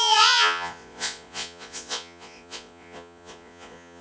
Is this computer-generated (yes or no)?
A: yes